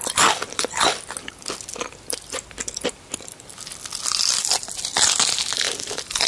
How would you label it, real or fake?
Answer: real